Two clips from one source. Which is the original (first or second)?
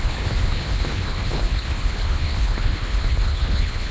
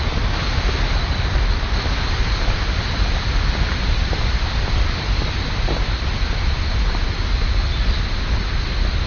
second